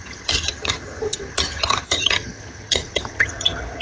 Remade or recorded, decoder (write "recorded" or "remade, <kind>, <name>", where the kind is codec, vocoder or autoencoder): remade, vocoder, HiFi-GAN